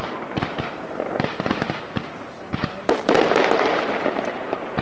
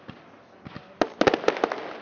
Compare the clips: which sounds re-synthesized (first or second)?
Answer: first